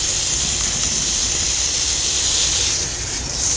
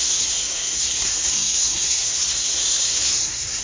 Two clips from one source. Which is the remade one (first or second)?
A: second